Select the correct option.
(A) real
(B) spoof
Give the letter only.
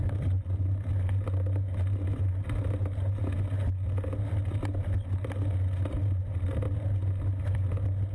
A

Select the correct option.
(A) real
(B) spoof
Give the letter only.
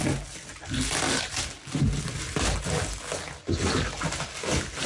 A